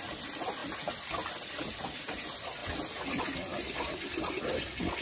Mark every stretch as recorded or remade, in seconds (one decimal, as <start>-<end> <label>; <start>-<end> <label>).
0.0-5.0 recorded